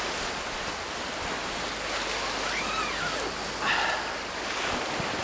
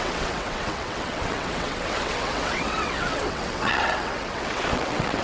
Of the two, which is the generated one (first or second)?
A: second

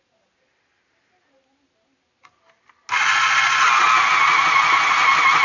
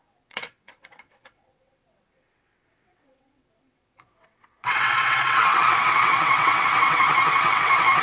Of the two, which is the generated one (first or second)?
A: second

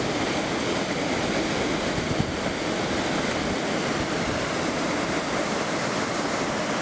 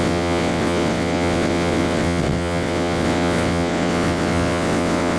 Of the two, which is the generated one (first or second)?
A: second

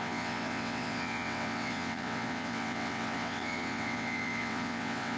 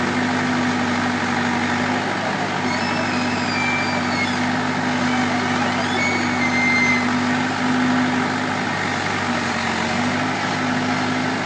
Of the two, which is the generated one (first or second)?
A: first